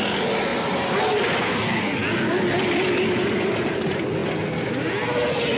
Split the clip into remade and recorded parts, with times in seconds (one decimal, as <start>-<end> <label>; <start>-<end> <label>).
0.0-5.6 recorded